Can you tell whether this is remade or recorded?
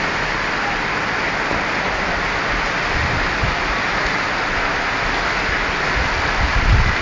recorded